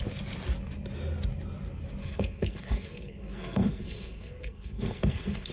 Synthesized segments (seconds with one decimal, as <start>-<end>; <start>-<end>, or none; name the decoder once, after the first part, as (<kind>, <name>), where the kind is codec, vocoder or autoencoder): 2.0-5.5 (codec, SNAC)